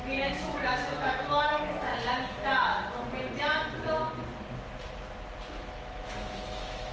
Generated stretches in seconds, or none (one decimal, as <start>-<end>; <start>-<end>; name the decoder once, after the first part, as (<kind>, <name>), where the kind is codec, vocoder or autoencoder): 0.0-1.9 (autoencoder, DAC-VAE); 5.5-6.9